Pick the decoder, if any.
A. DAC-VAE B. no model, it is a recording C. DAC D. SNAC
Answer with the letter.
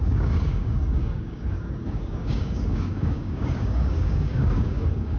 C